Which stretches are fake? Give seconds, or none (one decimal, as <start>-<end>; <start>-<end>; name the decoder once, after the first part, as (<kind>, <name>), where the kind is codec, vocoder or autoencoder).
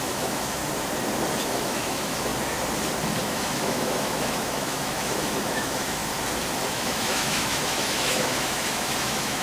0.0-0.6 (autoencoder, DAC-VAE); 1.4-2.3; 3.2-6.0; 6.7-9.4